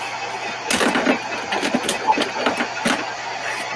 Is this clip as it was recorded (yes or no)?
yes